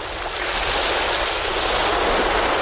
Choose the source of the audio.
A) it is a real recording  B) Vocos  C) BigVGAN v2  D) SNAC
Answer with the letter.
A